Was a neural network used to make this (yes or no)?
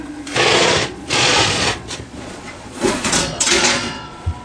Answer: yes